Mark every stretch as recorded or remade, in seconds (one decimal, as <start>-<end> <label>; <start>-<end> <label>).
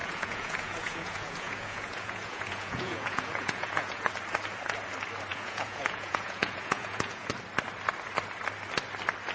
0.0-4.1 remade; 4.1-5.3 recorded; 5.3-7.3 remade; 7.3-9.3 recorded